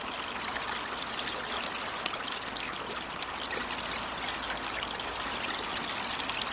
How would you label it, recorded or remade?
recorded